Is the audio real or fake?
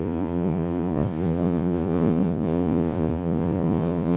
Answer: fake